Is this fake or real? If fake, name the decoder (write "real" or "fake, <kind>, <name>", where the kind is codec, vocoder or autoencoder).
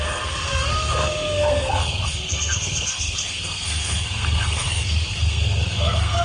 fake, codec, SNAC